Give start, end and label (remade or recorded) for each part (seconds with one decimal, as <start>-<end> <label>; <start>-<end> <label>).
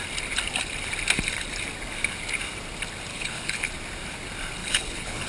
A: 0.0-3.1 recorded; 3.1-3.7 remade; 3.7-4.6 recorded; 4.6-5.3 remade